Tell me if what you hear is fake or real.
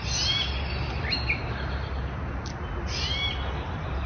real